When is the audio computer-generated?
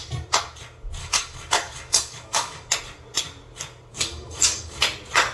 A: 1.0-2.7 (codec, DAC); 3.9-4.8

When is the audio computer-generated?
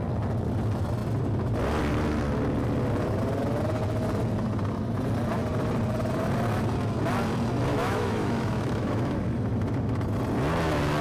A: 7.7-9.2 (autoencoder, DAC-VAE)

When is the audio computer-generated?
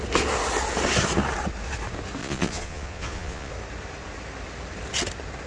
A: 2.2-3.5 (vocoder, Vocos)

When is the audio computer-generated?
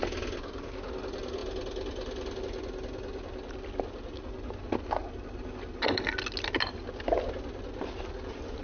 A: none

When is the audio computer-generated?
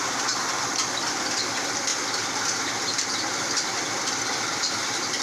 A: none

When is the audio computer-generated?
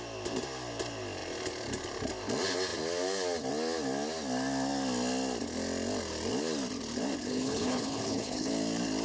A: 7.2-8.5 (codec, HILCodec)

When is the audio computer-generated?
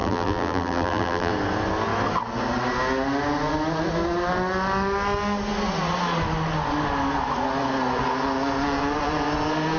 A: 0.0-1.3 (vocoder, BigVGAN v2)